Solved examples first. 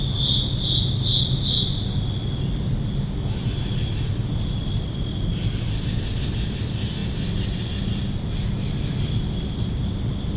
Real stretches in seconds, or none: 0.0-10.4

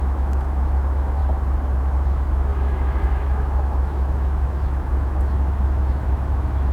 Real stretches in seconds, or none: 1.2-1.8

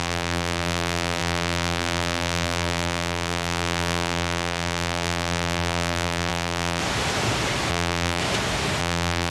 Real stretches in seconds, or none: 6.8-7.7; 8.2-8.8

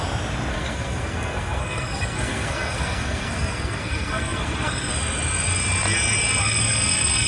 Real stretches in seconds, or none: 0.0-0.5; 4.9-6.4

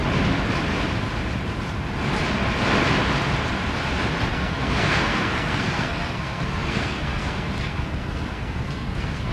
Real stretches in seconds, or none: 0.0-4.3

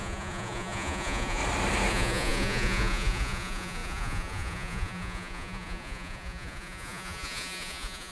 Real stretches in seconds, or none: 1.4-1.9

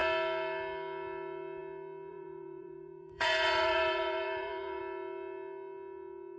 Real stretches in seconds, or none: 0.0-2.1; 4.8-6.4

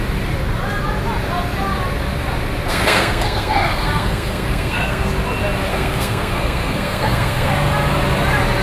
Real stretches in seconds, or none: 0.0-2.7; 5.1-5.7; 7.5-8.6